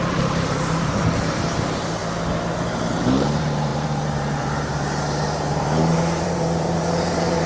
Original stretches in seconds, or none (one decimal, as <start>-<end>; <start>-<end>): 2.0-3.0